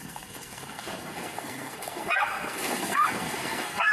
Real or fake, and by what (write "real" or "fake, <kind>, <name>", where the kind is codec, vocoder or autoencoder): fake, codec, SNAC